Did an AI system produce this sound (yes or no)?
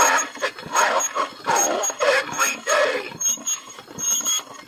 no